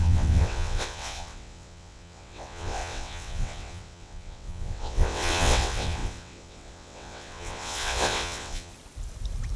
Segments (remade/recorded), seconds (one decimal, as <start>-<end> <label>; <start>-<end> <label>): 0.0-8.7 remade; 8.7-9.6 recorded